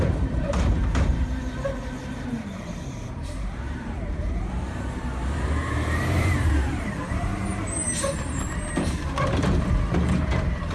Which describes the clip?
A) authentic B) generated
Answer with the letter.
B